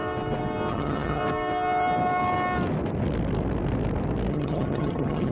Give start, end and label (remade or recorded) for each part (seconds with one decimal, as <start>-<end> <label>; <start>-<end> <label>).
0.0-0.7 recorded; 0.7-1.2 remade; 1.2-4.3 recorded; 4.3-5.3 remade